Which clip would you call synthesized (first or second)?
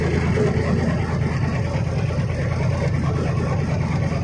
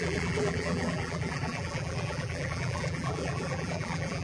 second